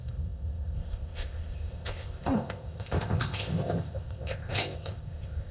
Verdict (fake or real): fake